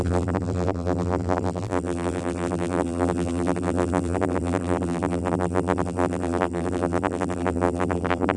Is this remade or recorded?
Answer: remade